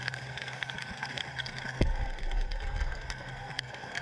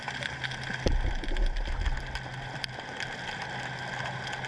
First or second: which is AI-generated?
first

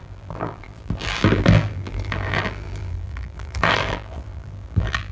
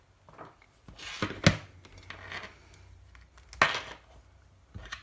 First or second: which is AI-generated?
first